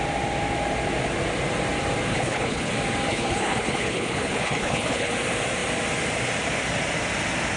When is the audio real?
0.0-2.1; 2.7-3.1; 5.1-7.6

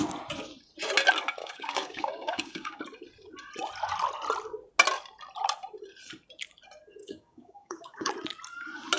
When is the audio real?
0.0-1.4; 2.8-7.0; 8.1-9.0

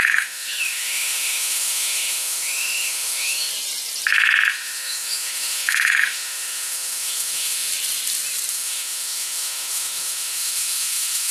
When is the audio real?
3.5-4.5; 7.7-8.5

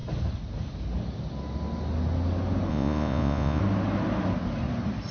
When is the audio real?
0.0-2.7; 3.6-5.1

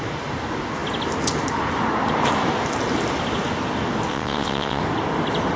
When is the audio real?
0.0-4.1; 4.8-5.6

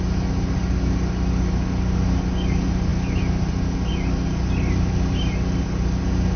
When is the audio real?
0.0-6.4

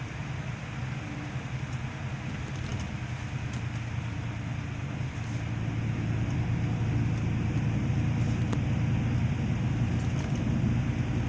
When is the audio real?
0.0-11.3

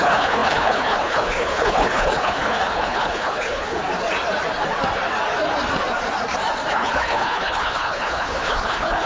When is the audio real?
3.8-6.7